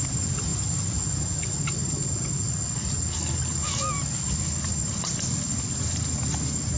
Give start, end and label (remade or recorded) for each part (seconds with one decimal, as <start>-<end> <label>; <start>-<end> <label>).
0.0-6.8 recorded

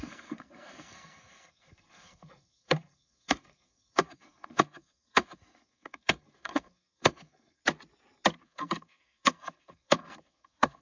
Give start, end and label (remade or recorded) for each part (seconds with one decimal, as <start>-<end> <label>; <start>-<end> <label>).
0.0-7.6 remade; 7.6-8.4 recorded; 8.4-10.8 remade

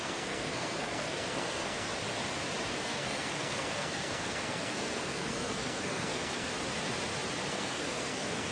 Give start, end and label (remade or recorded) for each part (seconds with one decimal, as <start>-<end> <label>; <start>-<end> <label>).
0.0-1.9 remade; 1.9-2.7 recorded; 2.7-6.5 remade; 6.5-7.5 recorded; 7.5-8.5 remade

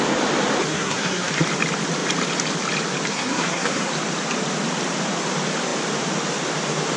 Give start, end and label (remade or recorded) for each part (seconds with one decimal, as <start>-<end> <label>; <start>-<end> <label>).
0.0-0.7 recorded; 0.7-1.3 remade; 1.3-3.1 recorded; 3.1-3.9 remade; 3.9-7.0 recorded

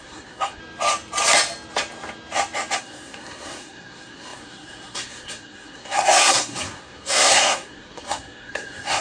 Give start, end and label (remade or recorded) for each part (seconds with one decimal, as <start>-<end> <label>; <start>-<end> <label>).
0.0-0.6 remade; 0.6-2.8 recorded; 2.8-9.0 remade

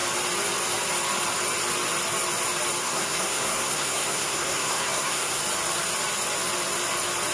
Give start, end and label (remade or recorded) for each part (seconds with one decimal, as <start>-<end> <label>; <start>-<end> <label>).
0.0-2.8 recorded; 2.8-5.4 remade; 5.4-7.3 recorded

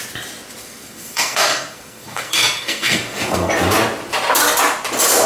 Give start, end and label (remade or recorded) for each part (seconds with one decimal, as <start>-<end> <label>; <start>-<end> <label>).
0.0-0.6 recorded; 0.6-3.5 remade; 3.5-5.3 recorded